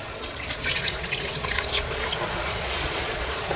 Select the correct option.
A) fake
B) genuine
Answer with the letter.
A